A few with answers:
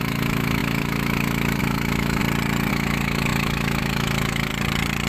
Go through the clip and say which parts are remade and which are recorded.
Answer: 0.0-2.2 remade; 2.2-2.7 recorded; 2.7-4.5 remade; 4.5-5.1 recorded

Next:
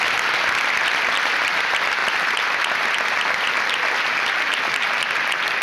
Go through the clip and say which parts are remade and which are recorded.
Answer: 0.0-5.6 recorded